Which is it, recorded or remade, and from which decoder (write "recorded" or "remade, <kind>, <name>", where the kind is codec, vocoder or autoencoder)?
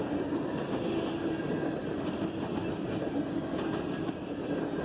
recorded